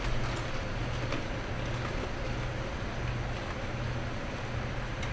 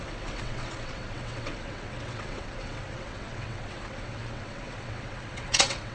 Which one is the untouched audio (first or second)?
first